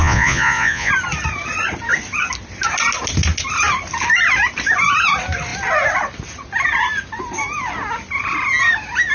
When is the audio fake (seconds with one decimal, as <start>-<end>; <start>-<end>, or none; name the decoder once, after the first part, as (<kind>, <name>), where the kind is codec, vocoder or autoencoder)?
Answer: 0.0-0.9 (vocoder, Vocos)